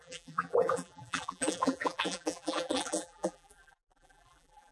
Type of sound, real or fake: fake